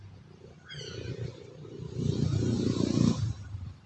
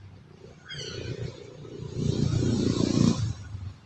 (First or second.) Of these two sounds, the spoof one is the first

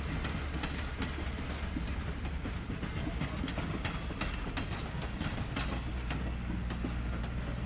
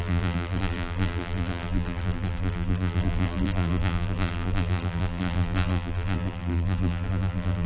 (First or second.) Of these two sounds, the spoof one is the second